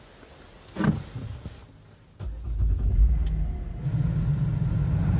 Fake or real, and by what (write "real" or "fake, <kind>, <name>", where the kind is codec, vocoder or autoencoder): real